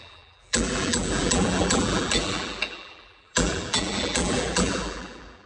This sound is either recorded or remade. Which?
remade